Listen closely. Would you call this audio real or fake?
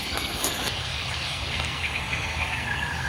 fake